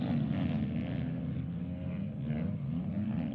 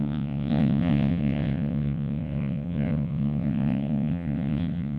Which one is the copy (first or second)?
second